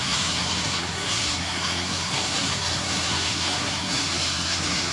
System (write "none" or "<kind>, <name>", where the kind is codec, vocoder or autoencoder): codec, SNAC